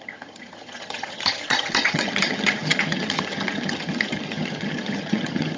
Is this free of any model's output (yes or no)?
no